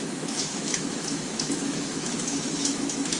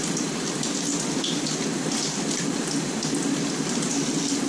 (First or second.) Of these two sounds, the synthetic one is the first